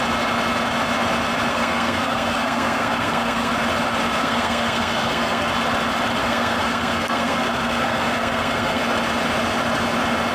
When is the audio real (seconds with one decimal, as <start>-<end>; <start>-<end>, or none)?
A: 0.0-1.5; 3.5-4.2; 5.5-6.2; 8.8-10.3